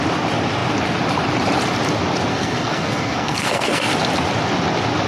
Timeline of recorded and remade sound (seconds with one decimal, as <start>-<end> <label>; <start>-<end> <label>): 0.0-2.3 recorded; 2.3-3.9 remade; 3.9-5.1 recorded